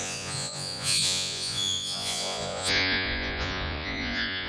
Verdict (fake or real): fake